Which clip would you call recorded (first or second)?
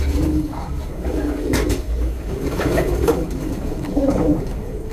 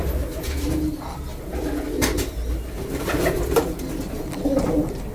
second